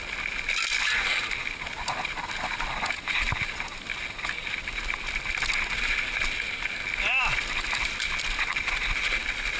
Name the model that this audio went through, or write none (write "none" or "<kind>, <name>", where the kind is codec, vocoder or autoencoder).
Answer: none